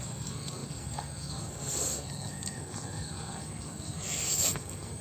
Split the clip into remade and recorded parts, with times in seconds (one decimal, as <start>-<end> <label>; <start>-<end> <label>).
0.0-5.0 remade